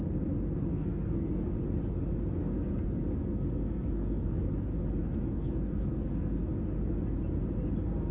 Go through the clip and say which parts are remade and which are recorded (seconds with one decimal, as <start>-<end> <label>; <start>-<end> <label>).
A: 0.0-0.7 recorded; 0.7-1.5 remade; 1.5-2.4 recorded; 2.4-4.4 remade; 4.4-5.0 recorded; 5.0-6.5 remade; 6.5-8.1 recorded